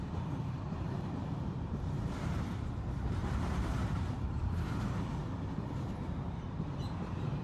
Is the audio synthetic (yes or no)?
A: yes